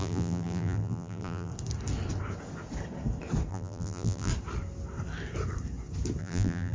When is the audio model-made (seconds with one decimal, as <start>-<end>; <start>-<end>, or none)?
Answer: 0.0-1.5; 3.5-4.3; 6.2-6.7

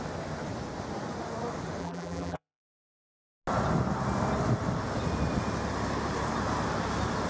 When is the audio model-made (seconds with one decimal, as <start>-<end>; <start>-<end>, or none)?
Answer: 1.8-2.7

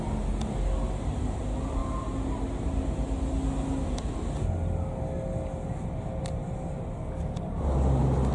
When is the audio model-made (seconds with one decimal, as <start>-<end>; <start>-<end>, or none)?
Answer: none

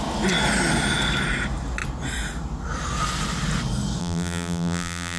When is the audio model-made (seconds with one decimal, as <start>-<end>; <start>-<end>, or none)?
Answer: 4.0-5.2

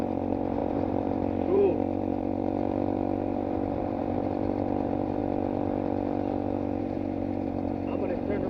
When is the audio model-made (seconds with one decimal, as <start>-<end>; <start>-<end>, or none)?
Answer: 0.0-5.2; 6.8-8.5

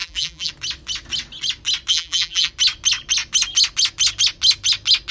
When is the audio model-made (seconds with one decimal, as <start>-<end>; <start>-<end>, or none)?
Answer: 0.0-0.5; 1.9-2.5